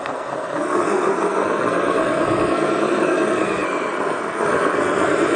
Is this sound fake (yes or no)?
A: yes